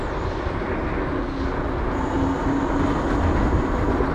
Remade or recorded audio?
recorded